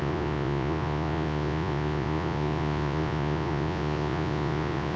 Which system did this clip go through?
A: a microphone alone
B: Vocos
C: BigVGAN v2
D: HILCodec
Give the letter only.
B